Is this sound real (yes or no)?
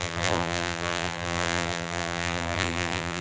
no